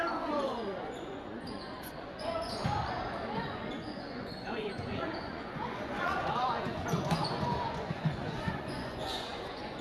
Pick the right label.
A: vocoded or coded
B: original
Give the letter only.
A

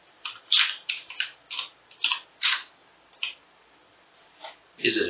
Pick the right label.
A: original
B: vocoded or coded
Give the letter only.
A